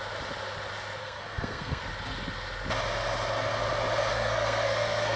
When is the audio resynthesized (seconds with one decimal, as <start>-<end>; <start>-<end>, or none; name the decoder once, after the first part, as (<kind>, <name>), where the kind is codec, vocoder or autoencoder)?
1.0-1.8 (codec, SNAC); 4.1-5.2